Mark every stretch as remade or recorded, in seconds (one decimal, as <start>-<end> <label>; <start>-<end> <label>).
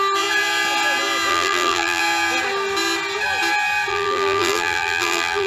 0.0-1.3 recorded; 1.3-2.0 remade; 2.0-3.9 recorded; 3.9-5.5 remade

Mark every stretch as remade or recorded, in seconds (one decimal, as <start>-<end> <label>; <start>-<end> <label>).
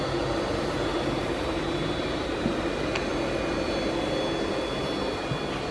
0.0-0.9 recorded; 0.9-2.4 remade; 2.4-5.7 recorded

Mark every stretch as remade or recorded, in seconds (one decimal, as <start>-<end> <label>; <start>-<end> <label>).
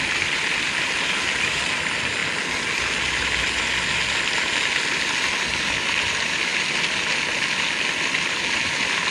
0.0-9.1 recorded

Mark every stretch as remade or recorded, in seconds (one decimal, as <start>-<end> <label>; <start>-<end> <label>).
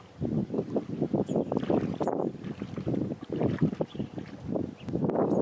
0.0-0.4 recorded; 0.4-0.9 remade; 0.9-2.2 recorded; 2.2-4.4 remade; 4.4-5.4 recorded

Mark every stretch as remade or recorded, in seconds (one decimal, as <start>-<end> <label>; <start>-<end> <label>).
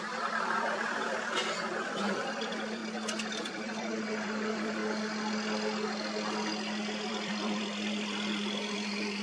0.0-2.8 remade; 2.8-3.3 recorded; 3.3-4.8 remade; 4.8-7.1 recorded; 7.1-9.2 remade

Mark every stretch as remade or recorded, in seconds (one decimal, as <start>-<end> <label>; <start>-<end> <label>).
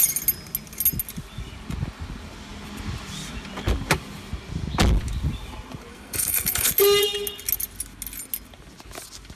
0.0-5.9 recorded; 5.9-6.7 remade; 6.7-9.4 recorded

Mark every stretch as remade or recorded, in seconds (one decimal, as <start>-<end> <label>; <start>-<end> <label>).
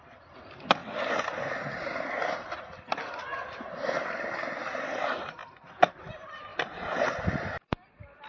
0.0-8.3 recorded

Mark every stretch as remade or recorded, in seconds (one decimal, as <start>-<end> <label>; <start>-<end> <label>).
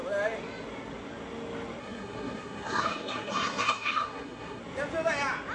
0.0-1.8 recorded; 1.8-4.6 remade; 4.6-5.5 recorded